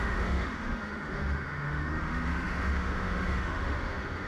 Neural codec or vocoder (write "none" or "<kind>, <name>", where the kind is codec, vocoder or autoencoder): autoencoder, DAC-VAE